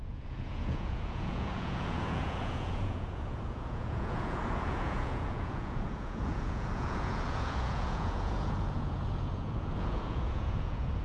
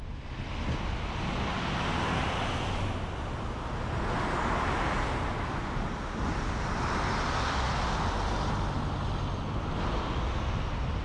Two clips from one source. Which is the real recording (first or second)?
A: second